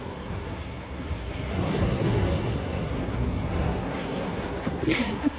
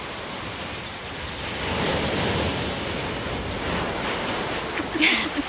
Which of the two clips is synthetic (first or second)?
first